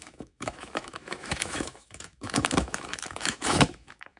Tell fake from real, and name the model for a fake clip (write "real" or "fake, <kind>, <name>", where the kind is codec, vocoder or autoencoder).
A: fake, autoencoder, DAC-VAE